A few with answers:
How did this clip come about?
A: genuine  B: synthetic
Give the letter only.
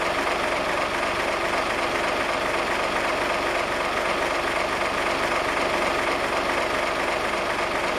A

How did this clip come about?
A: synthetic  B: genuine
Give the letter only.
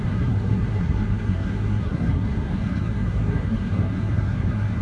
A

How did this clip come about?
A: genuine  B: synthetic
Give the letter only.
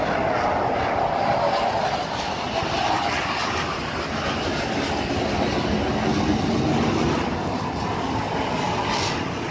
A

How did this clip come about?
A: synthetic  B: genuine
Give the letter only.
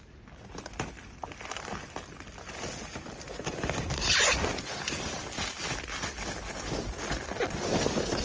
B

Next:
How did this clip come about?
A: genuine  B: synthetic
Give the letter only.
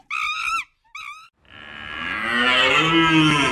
A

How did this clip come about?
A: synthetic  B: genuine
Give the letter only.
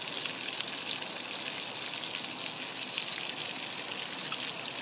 B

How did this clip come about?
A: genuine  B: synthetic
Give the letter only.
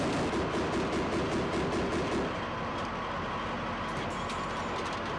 A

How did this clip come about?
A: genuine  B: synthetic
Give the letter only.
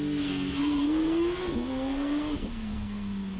B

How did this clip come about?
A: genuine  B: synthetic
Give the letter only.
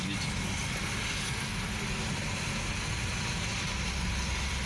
A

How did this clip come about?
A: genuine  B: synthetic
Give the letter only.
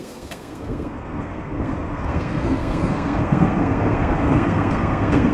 B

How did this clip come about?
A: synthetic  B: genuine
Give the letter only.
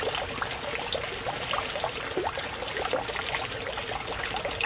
B